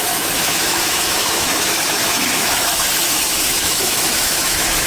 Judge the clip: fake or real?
fake